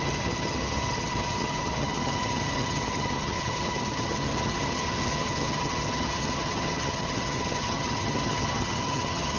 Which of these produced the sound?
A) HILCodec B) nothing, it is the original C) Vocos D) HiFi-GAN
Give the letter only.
D